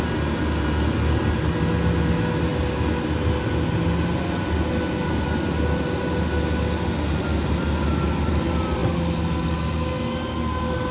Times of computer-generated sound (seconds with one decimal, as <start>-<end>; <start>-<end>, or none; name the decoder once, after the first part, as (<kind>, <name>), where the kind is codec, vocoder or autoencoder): none